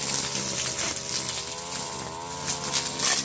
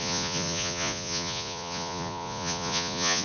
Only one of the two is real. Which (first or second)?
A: first